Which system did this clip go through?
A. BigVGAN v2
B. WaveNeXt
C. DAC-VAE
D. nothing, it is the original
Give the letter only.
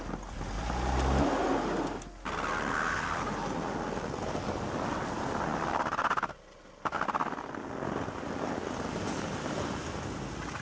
D